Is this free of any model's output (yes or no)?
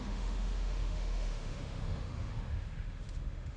no